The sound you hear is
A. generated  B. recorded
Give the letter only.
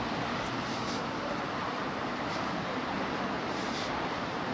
A